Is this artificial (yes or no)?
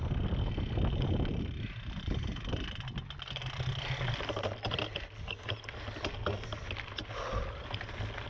no